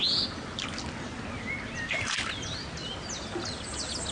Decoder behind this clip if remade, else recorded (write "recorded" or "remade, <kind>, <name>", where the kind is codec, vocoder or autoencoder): recorded